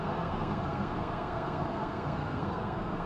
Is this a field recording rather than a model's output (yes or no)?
no